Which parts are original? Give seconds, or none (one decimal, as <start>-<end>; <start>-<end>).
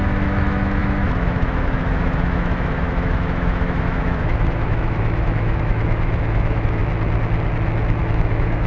6.8-8.0